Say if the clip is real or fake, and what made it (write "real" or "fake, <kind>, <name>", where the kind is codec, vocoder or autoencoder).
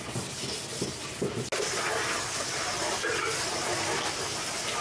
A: real